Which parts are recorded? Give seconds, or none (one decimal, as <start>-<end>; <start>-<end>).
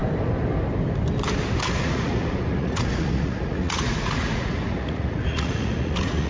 0.0-1.8